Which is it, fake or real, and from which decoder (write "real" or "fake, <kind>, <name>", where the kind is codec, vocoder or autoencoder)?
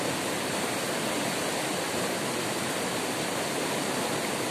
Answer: real